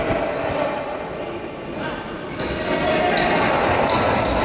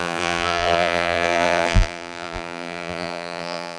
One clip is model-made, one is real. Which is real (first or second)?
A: first